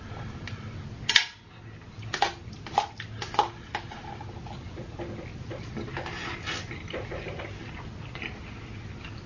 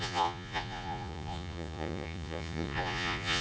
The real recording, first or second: first